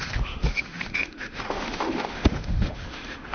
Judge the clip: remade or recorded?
remade